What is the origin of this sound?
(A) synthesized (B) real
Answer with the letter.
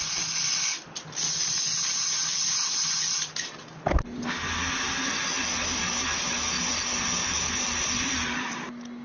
B